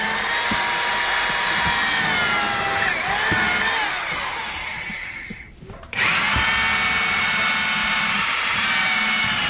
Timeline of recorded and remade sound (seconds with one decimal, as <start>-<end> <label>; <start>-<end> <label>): 0.0-4.2 recorded; 4.2-6.5 remade; 6.5-7.8 recorded; 7.8-9.5 remade